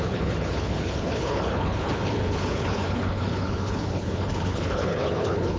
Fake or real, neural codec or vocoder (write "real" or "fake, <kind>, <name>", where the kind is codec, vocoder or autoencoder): fake, codec, HILCodec